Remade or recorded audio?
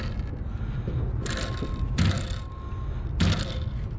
recorded